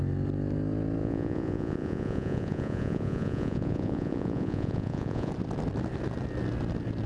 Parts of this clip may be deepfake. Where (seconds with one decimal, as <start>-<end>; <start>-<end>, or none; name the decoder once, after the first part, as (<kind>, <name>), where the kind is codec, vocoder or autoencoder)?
1.0-5.3 (vocoder, Vocos)